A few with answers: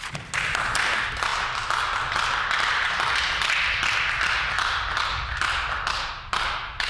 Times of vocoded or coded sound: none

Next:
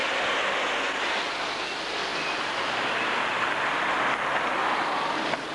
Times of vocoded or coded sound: none

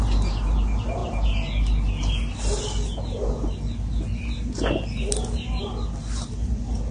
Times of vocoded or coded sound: none

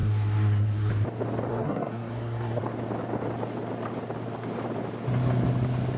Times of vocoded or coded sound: 0.0-0.9 (codec, SNAC); 1.5-2.6

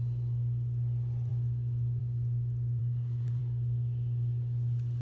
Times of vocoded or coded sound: 2.8-3.4 (codec, SNAC)

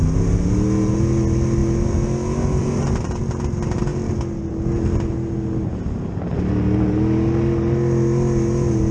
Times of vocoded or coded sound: none

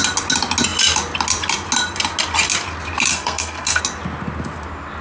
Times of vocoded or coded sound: 3.1-3.8 (codec, SNAC)

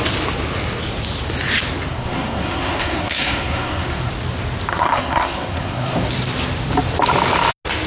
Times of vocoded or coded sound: 1.9-4.1 (codec, SNAC); 4.7-6.1